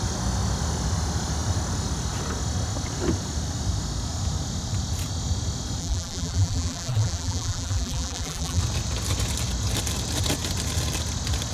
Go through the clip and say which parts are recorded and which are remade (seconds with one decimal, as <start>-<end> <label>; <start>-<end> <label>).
0.0-5.8 recorded; 5.8-8.6 remade; 8.6-11.5 recorded